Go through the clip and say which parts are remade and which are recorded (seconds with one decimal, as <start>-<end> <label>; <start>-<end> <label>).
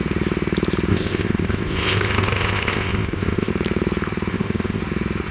0.0-0.9 recorded; 0.9-3.5 remade; 3.5-4.3 recorded; 4.3-4.8 remade; 4.8-5.3 recorded